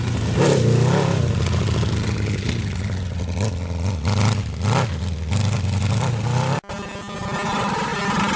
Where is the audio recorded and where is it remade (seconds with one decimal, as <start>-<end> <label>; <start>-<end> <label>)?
0.0-8.4 recorded